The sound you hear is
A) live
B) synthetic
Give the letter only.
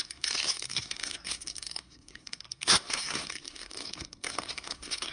B